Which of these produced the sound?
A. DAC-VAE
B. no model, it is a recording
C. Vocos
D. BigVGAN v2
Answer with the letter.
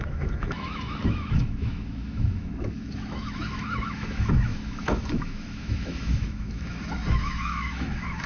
A